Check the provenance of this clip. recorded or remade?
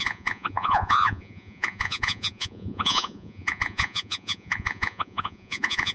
remade